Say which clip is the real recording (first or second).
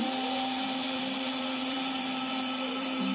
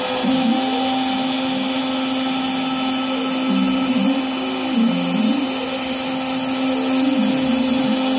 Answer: second